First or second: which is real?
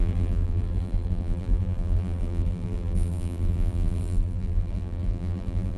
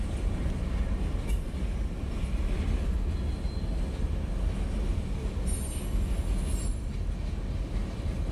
second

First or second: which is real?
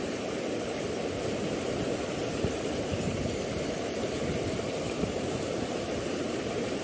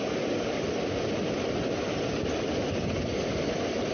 second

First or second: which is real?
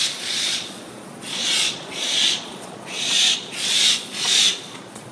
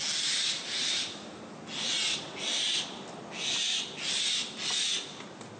second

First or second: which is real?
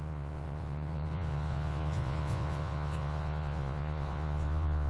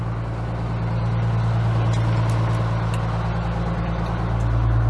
second